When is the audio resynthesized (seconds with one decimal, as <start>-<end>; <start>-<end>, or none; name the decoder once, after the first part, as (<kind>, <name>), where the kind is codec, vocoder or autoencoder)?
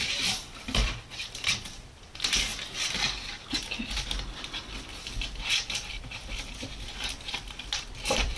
0.0-2.5 (vocoder, BigVGAN v2); 5.9-8.4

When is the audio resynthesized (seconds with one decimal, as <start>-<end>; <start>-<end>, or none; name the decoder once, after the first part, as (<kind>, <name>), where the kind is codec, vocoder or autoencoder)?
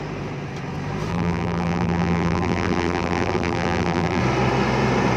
1.1-4.2 (vocoder, BigVGAN v2)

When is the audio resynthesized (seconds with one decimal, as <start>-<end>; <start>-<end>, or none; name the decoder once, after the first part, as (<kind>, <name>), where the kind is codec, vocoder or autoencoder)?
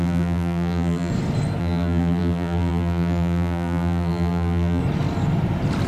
0.0-1.1 (vocoder, BigVGAN v2); 1.6-4.8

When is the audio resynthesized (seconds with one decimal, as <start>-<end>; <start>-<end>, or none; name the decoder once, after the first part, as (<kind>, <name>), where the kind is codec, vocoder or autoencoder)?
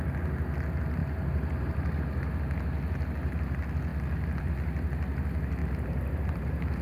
1.0-2.0 (vocoder, BigVGAN v2); 5.6-6.8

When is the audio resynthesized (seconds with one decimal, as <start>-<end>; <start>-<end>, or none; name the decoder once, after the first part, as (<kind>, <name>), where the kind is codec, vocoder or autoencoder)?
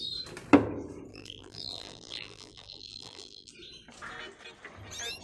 1.1-3.5 (vocoder, BigVGAN v2)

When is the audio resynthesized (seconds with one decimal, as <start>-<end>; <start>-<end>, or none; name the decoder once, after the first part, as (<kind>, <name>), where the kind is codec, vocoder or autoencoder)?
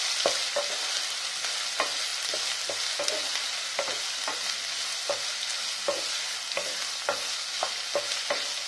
none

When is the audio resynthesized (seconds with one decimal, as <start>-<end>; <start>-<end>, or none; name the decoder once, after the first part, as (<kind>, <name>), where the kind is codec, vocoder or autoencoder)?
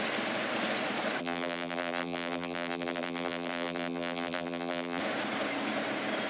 1.2-5.0 (vocoder, BigVGAN v2)